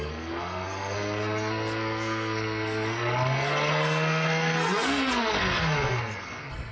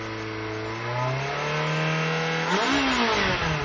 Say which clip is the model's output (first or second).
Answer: first